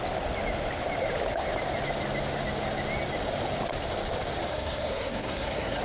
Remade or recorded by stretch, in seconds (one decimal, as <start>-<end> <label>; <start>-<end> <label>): 0.0-4.5 recorded; 4.5-5.8 remade